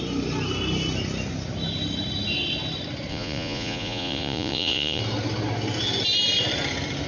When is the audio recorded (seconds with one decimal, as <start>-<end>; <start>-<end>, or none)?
0.0-3.1; 5.0-7.1